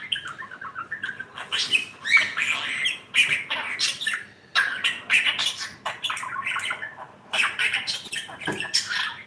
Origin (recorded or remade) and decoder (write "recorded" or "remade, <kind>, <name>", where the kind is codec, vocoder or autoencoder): recorded